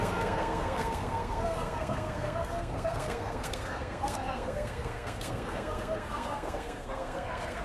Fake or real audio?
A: fake